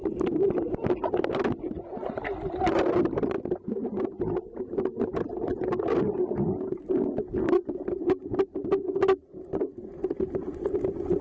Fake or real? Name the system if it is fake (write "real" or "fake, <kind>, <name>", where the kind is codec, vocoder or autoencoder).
real